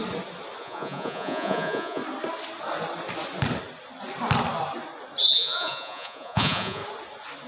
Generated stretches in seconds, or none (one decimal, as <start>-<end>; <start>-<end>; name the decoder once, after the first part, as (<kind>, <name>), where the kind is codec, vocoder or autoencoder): 0.6-2.0 (vocoder, Vocos); 5.3-6.8